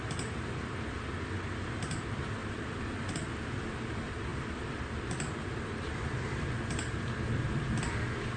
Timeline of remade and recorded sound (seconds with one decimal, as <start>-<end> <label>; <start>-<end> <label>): 0.0-2.4 recorded; 2.4-3.1 remade; 3.1-4.3 recorded; 4.3-7.8 remade; 7.8-8.4 recorded